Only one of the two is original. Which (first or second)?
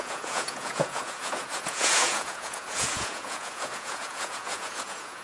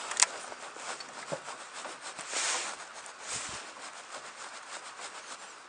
second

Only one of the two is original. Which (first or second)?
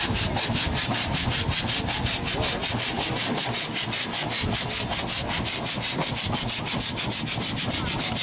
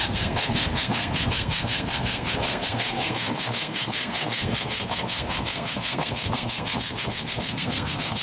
first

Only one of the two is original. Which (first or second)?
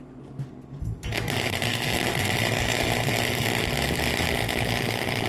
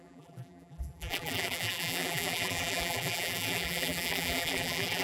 first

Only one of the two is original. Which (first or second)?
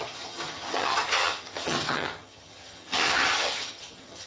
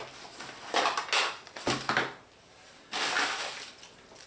second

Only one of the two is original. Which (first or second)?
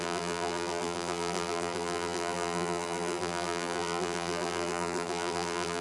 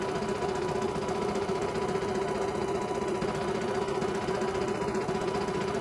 second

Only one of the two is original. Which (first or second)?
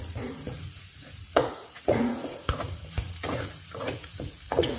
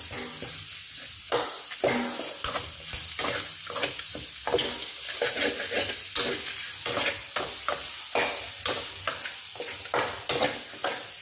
second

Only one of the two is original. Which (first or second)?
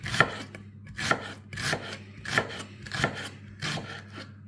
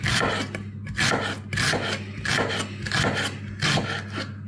second